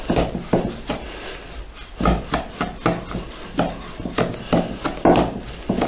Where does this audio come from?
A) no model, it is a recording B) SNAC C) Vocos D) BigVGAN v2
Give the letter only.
A